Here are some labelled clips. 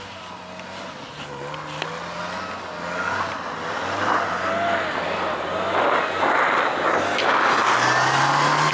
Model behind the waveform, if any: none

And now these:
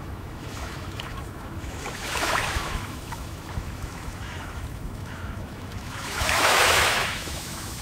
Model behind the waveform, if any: autoencoder, DAC-VAE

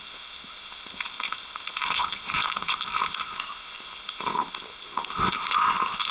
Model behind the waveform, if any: codec, ZipCodec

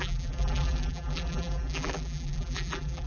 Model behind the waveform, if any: vocoder, BigVGAN v2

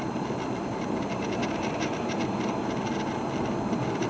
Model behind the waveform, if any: none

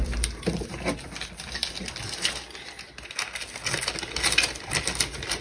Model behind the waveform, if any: none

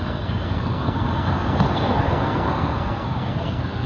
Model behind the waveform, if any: codec, SNAC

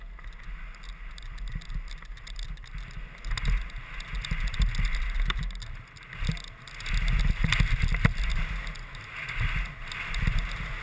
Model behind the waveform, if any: none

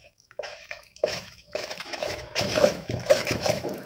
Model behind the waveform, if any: autoencoder, DAC-VAE